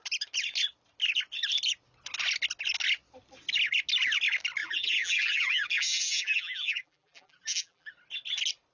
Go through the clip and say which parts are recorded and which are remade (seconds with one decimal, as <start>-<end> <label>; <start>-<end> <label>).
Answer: 0.0-4.6 recorded; 4.6-7.9 remade; 7.9-8.7 recorded